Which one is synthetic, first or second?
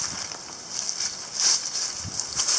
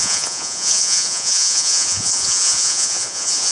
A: second